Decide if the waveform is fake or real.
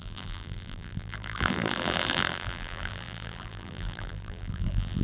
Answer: fake